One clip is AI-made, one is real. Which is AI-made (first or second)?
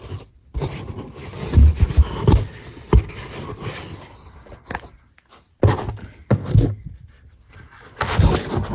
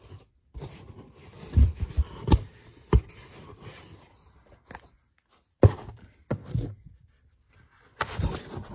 second